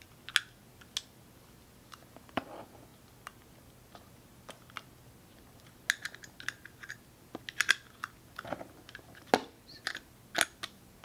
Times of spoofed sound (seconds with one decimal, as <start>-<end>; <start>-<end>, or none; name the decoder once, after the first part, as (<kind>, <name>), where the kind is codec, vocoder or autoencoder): none